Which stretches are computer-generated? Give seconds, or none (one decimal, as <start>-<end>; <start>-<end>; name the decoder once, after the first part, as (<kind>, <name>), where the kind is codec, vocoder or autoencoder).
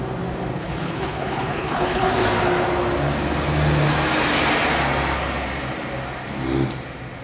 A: 0.5-2.1 (codec, HILCodec)